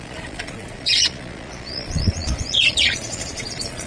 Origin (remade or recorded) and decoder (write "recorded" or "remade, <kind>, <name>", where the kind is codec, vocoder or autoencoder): remade, vocoder, Vocos